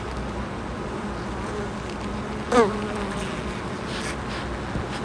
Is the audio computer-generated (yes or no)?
no